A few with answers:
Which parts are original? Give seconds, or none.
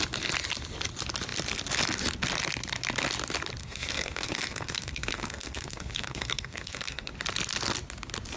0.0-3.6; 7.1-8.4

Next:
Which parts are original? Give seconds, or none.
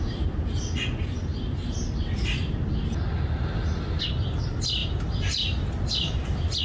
0.0-6.6